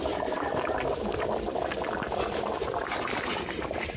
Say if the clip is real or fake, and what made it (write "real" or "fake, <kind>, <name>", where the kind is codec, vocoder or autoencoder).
fake, vocoder, BigVGAN v2